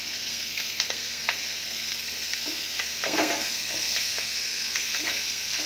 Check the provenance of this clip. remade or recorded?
remade